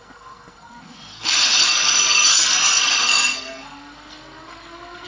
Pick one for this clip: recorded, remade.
remade